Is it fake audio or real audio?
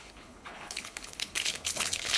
fake